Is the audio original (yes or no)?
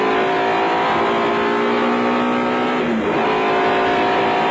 yes